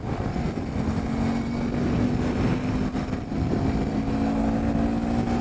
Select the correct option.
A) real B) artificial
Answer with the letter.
A